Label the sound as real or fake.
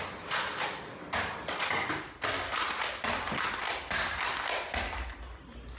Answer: real